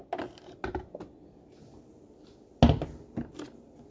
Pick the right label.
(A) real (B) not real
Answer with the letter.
A